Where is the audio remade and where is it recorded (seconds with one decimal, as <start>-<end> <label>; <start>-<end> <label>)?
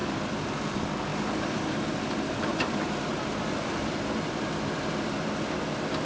0.0-0.5 remade; 0.5-1.1 recorded; 1.1-2.7 remade; 2.7-3.1 recorded; 3.1-3.8 remade; 3.8-6.0 recorded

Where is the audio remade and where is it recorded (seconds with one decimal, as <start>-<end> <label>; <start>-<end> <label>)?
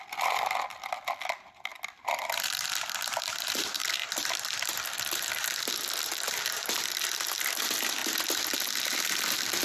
0.0-8.0 remade; 8.0-9.0 recorded; 9.0-9.6 remade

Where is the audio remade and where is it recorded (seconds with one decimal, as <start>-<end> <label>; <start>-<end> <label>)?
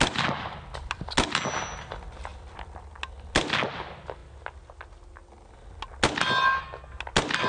0.0-2.3 recorded; 2.3-2.9 remade; 2.9-7.5 recorded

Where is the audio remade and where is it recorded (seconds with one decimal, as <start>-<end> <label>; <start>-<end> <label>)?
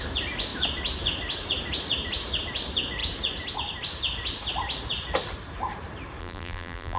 0.0-6.2 recorded; 6.2-7.0 remade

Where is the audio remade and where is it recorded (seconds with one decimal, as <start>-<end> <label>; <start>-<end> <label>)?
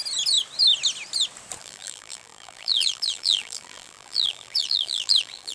0.0-1.6 recorded; 1.6-5.5 remade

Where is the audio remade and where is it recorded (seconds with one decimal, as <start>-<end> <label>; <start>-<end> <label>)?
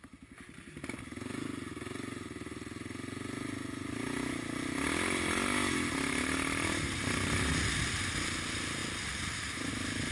0.0-10.1 recorded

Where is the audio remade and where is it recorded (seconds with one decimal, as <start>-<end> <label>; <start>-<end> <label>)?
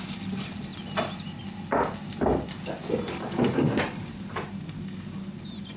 0.0-0.7 remade; 0.7-3.8 recorded; 3.8-5.8 remade